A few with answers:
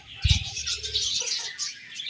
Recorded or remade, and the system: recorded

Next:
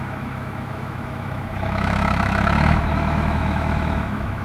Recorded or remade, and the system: remade, autoencoder, DAC-VAE